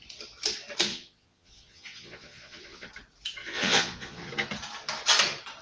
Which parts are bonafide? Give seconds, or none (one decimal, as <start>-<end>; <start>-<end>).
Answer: 0.0-0.9; 2.9-3.4; 4.3-5.6

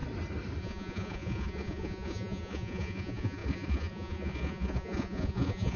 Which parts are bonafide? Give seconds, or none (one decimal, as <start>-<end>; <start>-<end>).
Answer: 0.0-0.6

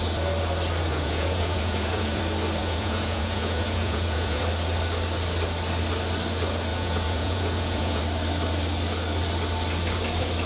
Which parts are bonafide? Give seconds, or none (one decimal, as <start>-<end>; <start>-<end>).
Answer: 0.0-0.9; 2.2-2.6; 4.4-6.7; 8.0-10.5

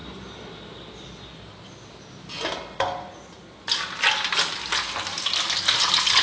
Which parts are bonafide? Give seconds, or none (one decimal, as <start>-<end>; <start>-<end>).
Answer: 0.0-6.2

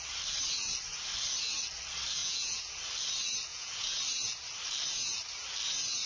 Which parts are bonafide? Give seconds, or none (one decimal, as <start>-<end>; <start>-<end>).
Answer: 0.0-2.2; 2.8-3.5; 4.0-6.1

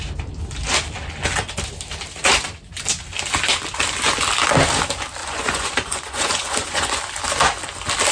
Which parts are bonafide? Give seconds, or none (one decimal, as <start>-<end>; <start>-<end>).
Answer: 0.0-5.2; 7.0-8.1

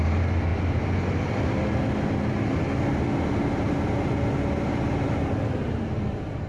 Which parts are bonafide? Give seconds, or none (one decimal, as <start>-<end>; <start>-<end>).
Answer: 0.0-6.5